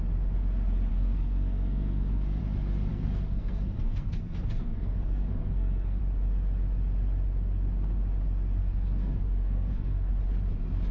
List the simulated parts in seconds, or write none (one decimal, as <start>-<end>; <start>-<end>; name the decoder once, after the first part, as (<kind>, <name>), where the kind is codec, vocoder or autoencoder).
0.9-2.4 (codec, SNAC); 2.9-6.0; 8.6-10.1